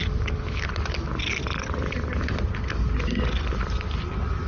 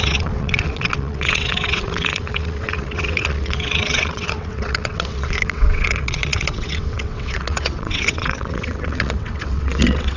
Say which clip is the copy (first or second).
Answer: second